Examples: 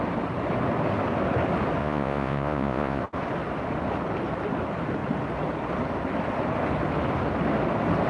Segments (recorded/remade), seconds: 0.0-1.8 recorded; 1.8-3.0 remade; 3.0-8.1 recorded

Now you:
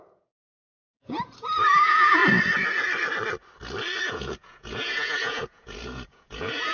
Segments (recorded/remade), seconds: 0.0-2.2 remade; 2.2-4.0 recorded; 4.0-6.7 remade